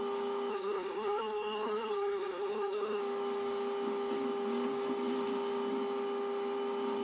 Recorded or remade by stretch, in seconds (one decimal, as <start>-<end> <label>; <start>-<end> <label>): 0.0-0.5 recorded; 0.5-3.0 remade; 3.0-7.0 recorded